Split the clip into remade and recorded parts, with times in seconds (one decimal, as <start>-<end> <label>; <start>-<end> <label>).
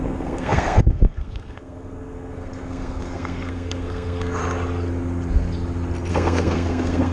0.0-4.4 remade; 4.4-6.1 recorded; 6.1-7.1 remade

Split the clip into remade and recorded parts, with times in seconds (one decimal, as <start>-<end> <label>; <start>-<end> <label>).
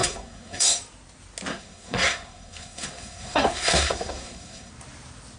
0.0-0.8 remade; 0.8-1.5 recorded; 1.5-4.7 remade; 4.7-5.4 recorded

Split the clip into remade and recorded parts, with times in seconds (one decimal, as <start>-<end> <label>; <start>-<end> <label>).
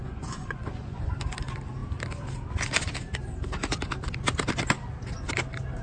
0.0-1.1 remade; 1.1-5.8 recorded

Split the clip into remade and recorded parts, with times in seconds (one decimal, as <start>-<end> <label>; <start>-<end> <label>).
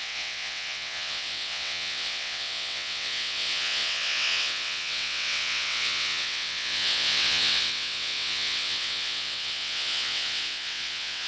0.0-11.3 remade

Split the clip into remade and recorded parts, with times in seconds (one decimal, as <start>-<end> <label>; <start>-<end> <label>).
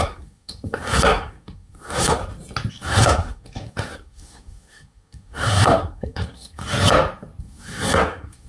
0.0-2.2 remade; 2.2-2.7 recorded; 2.7-6.6 remade; 6.6-7.4 recorded; 7.4-8.5 remade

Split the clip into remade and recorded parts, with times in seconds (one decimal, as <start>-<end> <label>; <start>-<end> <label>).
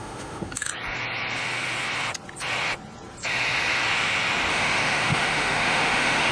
0.0-0.7 remade; 0.7-4.5 recorded; 4.5-6.3 remade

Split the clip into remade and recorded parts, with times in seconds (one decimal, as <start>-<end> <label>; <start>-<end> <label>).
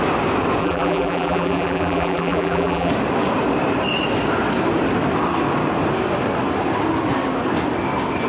0.0-0.6 recorded; 0.6-2.9 remade; 2.9-8.3 recorded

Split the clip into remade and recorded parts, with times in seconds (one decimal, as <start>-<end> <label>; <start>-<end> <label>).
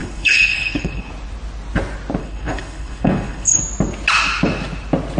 0.0-1.1 remade; 1.1-2.2 recorded; 2.2-3.6 remade; 3.6-5.2 recorded